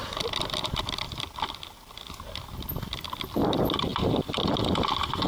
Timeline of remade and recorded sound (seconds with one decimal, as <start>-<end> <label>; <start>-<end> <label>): 0.0-5.3 recorded